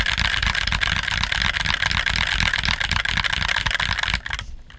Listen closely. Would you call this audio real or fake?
real